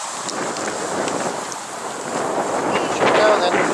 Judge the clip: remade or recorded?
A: recorded